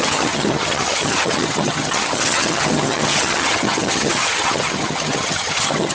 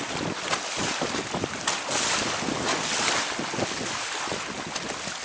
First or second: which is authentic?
second